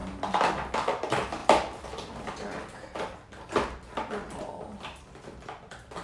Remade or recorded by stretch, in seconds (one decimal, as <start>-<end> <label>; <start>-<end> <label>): 0.0-6.0 recorded